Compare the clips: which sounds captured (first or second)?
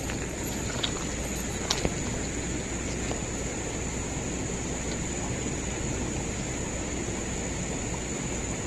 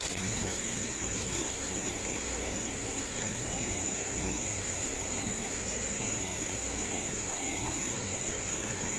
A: first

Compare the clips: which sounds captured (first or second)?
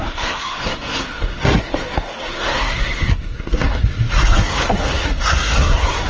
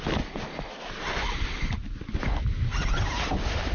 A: second